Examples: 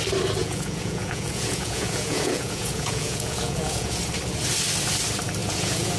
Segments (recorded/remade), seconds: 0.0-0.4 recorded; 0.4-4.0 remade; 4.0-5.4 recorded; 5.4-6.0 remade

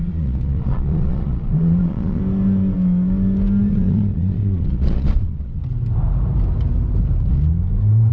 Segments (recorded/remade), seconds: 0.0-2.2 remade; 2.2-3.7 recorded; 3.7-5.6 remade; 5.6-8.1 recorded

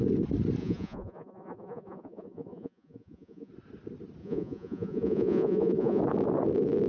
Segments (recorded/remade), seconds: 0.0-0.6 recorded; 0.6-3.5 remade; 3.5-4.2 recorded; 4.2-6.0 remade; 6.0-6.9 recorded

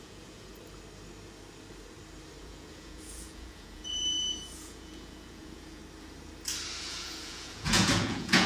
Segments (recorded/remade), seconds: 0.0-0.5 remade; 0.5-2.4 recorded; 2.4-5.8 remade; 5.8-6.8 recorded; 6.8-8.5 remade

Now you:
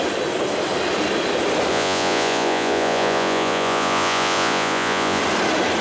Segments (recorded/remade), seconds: 0.0-1.7 recorded; 1.7-5.2 remade; 5.2-5.8 recorded